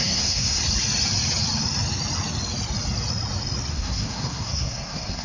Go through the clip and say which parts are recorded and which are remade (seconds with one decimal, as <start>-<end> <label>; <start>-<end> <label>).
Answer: 0.0-0.6 remade; 0.6-3.7 recorded; 3.7-5.2 remade